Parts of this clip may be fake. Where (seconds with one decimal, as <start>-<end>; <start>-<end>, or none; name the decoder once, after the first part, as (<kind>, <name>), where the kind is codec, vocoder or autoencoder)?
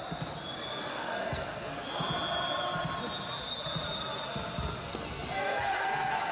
0.9-1.8 (codec, SNAC); 4.9-6.3